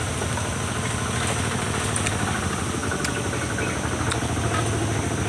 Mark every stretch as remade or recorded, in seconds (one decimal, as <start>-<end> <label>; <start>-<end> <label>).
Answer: 0.0-5.3 recorded